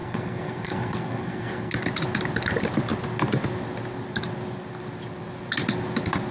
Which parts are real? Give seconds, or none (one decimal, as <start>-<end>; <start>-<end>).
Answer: 1.7-6.3